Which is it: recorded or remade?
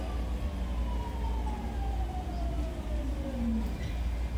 recorded